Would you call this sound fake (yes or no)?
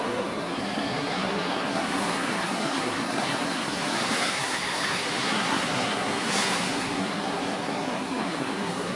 yes